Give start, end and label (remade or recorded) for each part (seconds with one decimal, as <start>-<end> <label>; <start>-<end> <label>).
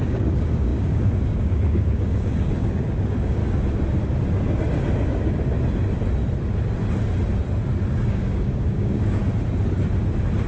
0.0-3.4 remade; 3.4-8.1 recorded; 8.1-9.2 remade; 9.2-10.5 recorded